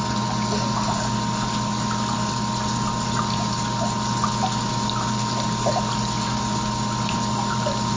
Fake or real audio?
fake